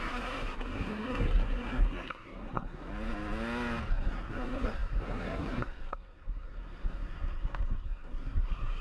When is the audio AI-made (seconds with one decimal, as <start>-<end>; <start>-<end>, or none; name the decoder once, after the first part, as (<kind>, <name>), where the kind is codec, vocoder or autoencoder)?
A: 0.0-2.9 (codec, SNAC); 3.9-8.8